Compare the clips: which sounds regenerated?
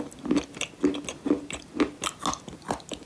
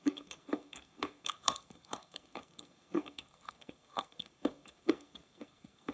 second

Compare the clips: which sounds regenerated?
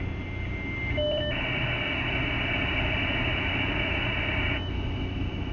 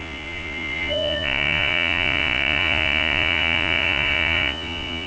second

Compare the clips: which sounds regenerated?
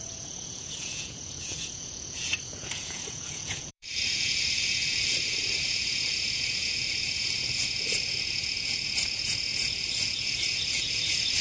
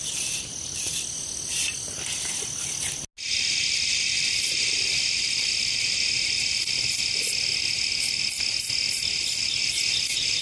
first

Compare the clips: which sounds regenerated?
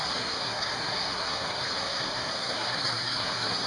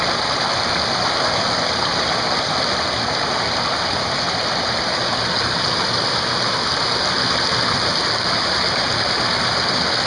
first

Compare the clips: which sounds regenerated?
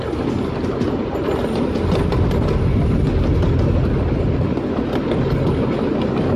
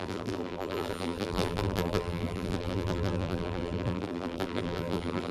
second